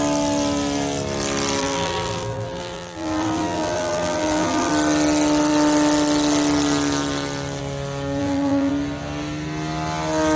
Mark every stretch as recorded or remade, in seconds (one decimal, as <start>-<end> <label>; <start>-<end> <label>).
0.0-1.6 recorded; 1.6-4.7 remade; 4.7-8.2 recorded; 8.2-8.7 remade; 8.7-10.4 recorded